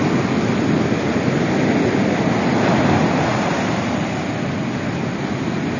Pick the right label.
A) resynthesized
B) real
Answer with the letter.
B